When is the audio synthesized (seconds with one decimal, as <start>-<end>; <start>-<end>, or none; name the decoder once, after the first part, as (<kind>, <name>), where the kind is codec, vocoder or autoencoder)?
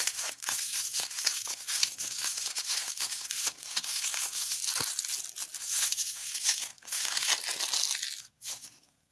0.0-4.6 (codec, SNAC); 5.6-7.3; 8.2-9.1